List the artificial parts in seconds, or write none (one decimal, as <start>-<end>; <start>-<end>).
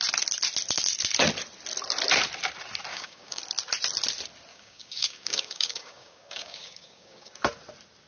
2.9-3.4; 4.5-7.3